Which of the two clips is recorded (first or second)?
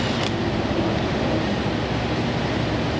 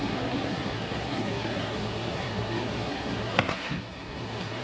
first